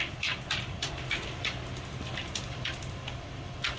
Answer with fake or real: fake